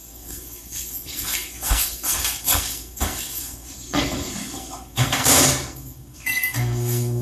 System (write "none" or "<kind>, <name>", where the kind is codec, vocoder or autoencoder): codec, SNAC